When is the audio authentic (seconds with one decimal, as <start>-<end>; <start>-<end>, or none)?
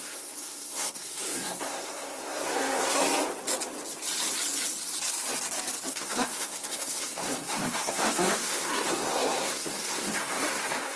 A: 3.0-5.9